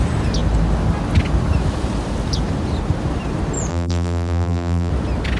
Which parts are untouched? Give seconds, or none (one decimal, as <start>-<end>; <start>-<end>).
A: 0.0-3.7; 4.9-5.4